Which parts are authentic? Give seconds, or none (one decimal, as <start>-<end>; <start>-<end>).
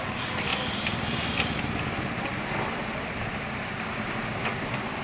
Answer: 0.0-5.0